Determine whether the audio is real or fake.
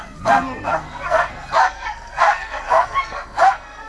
fake